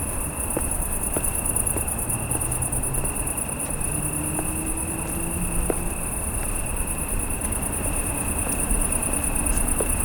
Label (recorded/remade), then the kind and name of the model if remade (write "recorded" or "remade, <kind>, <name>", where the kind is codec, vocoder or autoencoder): recorded